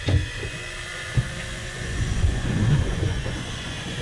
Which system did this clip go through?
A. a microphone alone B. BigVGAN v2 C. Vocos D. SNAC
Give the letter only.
C